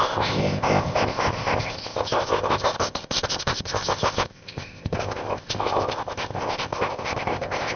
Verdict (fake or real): fake